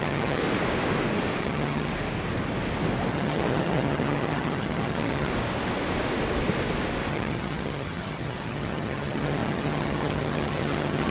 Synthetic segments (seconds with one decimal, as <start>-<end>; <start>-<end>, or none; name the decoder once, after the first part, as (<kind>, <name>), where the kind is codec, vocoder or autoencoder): 0.0-0.4 (vocoder, HiFi-GAN); 1.4-1.9; 3.1-5.3; 7.1-11.1